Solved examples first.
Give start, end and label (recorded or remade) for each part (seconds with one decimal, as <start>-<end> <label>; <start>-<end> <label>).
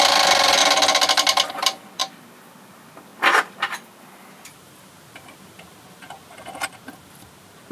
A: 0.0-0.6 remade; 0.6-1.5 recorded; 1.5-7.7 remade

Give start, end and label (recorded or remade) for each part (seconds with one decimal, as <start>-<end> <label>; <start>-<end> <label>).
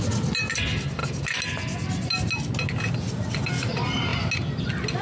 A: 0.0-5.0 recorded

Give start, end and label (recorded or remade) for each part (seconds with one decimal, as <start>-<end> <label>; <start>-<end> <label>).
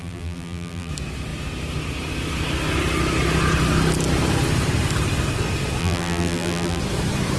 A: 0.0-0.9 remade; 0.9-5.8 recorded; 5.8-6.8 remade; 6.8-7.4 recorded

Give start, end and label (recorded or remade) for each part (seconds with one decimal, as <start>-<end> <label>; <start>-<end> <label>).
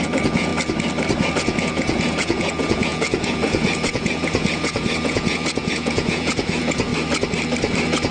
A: 0.0-0.5 remade; 0.5-1.3 recorded; 1.3-6.9 remade; 6.9-8.1 recorded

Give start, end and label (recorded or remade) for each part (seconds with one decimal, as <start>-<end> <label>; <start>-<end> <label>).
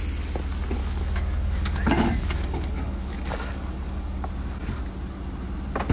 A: 0.0-0.8 recorded; 0.8-4.3 remade; 4.3-5.9 recorded